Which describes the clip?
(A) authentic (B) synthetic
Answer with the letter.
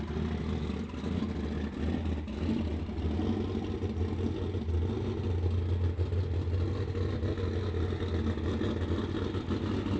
A